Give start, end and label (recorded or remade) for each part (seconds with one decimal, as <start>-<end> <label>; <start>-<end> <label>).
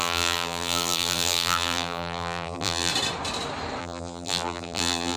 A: 0.0-2.9 remade; 2.9-3.8 recorded; 3.8-5.2 remade